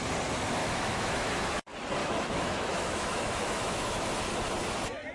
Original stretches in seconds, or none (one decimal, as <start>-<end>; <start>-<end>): 0.0-0.6; 1.3-2.0; 4.1-5.1